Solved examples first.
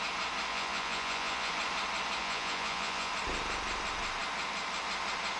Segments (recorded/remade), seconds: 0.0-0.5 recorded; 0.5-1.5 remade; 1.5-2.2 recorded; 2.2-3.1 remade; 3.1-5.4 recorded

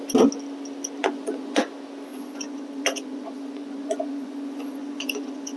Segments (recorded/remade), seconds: 0.0-1.0 recorded; 1.0-1.6 remade; 1.6-2.1 recorded; 2.1-5.6 remade

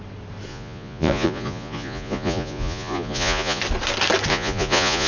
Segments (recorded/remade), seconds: 0.0-0.5 recorded; 0.5-3.6 remade; 3.6-4.3 recorded; 4.3-5.1 remade

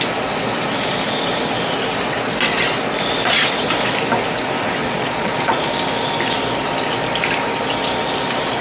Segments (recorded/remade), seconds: 0.0-4.8 recorded; 4.8-5.7 remade; 5.7-8.6 recorded

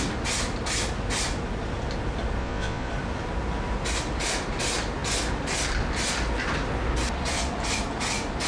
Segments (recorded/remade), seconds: 0.0-2.4 recorded; 2.4-2.9 remade; 2.9-8.5 recorded

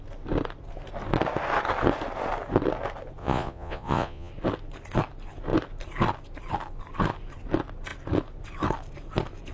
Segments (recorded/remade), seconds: 0.0-3.2 recorded; 3.2-4.3 remade; 4.3-9.5 recorded

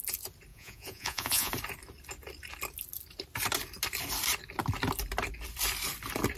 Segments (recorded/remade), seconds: 0.0-0.5 recorded; 0.5-1.5 remade; 1.5-6.4 recorded

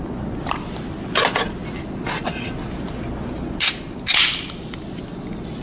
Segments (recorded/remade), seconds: 0.0-5.6 recorded